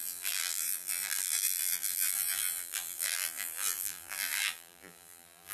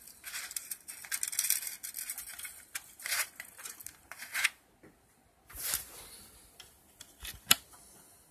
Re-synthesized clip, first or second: first